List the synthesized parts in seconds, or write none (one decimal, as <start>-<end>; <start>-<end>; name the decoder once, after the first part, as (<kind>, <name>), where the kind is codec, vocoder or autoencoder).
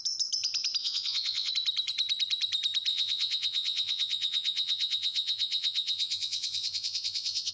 0.8-1.5 (vocoder, Vocos); 2.9-7.5